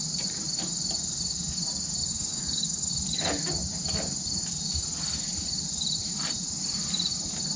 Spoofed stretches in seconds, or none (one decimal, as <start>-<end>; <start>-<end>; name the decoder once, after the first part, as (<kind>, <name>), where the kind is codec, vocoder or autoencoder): 2.0-2.9 (codec, DAC)